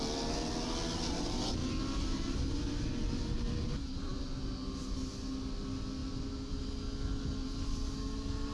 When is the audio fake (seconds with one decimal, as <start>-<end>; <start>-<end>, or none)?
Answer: none